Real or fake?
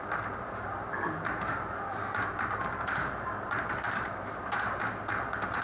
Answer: fake